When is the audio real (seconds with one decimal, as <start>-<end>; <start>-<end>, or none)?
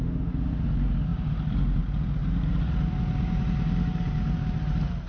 0.0-1.1; 1.8-2.2